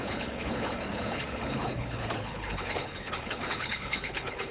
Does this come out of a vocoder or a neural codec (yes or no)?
yes